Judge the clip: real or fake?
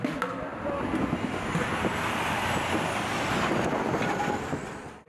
real